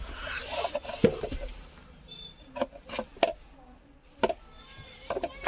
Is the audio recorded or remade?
recorded